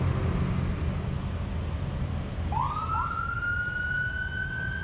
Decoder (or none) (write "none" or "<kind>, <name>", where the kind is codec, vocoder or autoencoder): none